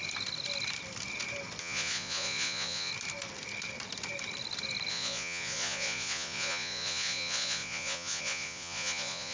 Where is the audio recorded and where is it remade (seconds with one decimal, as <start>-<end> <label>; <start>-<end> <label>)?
0.0-1.6 recorded; 1.6-2.9 remade; 2.9-4.9 recorded; 4.9-9.3 remade